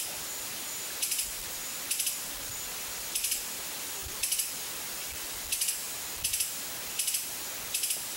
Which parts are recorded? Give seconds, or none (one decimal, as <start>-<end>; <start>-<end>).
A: 0.0-8.2